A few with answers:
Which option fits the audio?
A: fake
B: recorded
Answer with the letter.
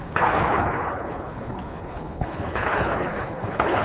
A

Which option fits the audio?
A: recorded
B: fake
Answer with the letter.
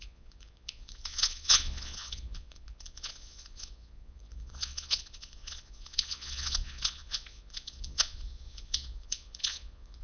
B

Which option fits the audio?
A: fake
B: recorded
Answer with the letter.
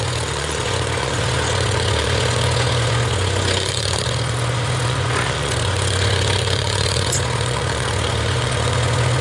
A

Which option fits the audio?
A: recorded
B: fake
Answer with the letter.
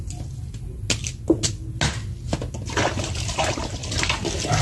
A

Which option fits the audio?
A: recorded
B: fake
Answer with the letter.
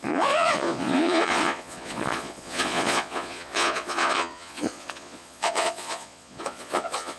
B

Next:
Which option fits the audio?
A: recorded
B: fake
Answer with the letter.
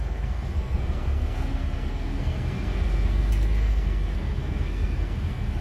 B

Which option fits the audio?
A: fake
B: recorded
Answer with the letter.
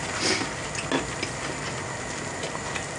B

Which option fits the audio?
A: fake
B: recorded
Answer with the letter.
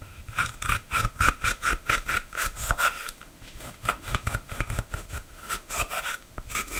A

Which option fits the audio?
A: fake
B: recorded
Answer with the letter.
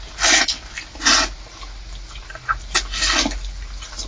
B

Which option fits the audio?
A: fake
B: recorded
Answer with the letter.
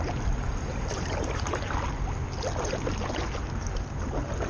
B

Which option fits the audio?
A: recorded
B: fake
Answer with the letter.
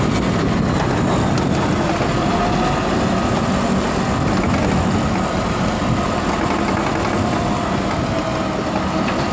A